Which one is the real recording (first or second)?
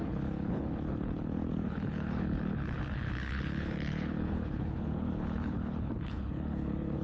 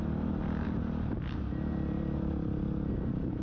second